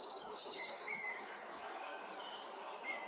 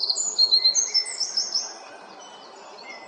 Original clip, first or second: second